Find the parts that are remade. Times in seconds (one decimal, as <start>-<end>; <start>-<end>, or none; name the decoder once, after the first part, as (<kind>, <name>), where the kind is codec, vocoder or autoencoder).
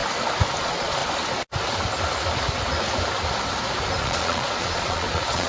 0.6-1.0 (vocoder, Vocos); 4.0-5.5